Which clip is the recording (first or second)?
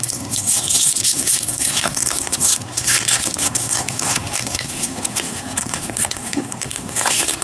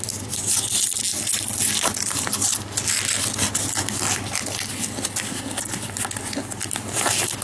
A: second